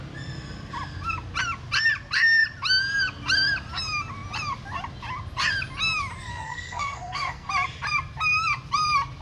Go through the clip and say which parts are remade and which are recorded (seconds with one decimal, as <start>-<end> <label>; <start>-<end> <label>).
0.0-6.3 recorded; 6.3-7.5 remade; 7.5-9.2 recorded